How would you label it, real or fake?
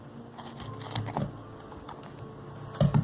real